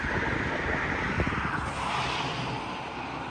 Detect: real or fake fake